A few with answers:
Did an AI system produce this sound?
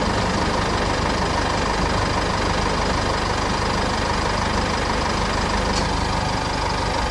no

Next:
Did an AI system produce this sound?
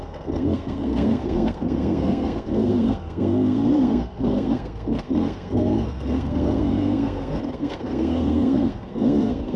yes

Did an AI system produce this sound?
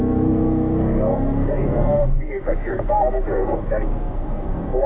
yes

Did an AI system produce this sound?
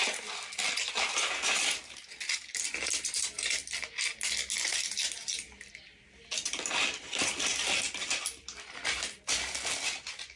no